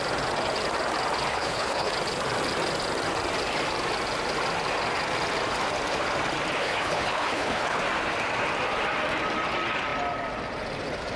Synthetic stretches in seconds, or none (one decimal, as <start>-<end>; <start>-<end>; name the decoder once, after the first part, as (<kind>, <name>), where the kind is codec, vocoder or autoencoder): 1.3-1.9 (codec, HILCodec); 6.6-7.8